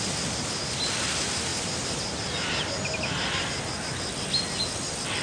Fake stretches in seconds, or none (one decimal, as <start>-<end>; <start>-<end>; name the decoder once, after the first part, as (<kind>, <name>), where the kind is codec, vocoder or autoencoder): none